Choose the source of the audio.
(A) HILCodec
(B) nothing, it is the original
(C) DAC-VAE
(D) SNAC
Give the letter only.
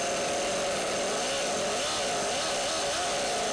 B